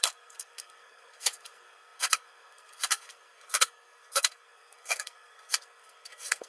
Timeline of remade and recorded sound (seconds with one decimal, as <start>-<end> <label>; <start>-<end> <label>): 0.0-6.5 remade